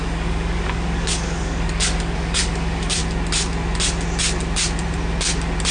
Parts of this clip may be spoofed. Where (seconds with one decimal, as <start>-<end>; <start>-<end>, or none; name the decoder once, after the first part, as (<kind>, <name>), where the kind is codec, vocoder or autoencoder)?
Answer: 0.0-3.0 (codec, DAC)